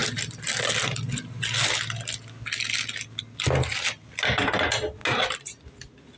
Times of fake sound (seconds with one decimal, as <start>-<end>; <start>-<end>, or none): none

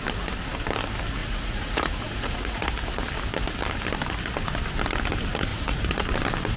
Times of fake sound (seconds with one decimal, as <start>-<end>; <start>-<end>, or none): 1.2-2.7; 5.5-6.0

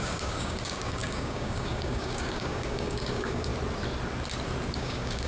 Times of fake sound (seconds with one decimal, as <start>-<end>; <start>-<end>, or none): 0.0-3.5; 4.7-5.3

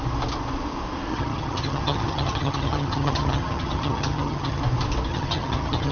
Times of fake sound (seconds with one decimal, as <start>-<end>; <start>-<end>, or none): 1.1-4.6; 5.1-5.9

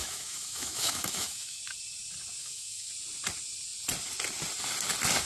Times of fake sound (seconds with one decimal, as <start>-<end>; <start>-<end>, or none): 0.0-1.6; 2.4-2.9